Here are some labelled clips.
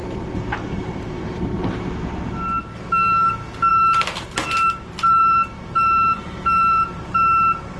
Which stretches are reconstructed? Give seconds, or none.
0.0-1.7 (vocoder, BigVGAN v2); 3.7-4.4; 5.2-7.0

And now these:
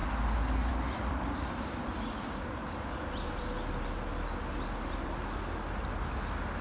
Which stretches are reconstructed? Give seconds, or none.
0.7-2.6 (vocoder, BigVGAN v2)

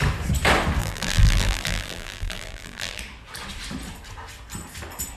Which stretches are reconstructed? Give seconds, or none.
0.8-3.0 (vocoder, BigVGAN v2)

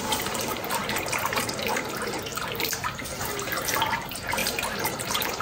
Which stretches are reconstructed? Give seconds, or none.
2.3-3.2 (vocoder, BigVGAN v2); 4.4-5.4

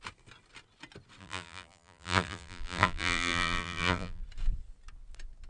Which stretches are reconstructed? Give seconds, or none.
1.2-4.2 (vocoder, BigVGAN v2)

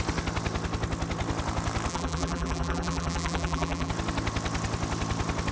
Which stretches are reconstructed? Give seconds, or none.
1.9-3.9 (vocoder, BigVGAN v2)